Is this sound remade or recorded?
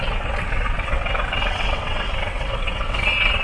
remade